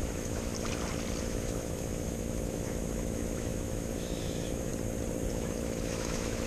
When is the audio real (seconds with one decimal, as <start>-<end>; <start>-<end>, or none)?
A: 0.5-1.2; 4.7-5.3